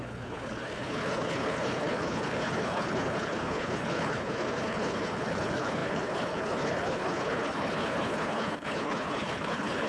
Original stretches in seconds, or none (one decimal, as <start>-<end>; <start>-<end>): none